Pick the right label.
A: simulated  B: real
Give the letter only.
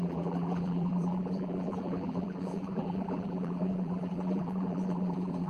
A